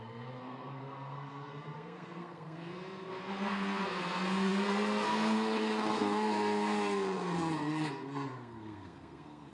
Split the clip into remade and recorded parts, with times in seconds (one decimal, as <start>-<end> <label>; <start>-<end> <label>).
0.0-9.5 remade